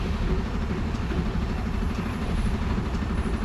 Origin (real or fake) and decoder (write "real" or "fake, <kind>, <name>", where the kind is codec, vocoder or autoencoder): fake, vocoder, BigVGAN v2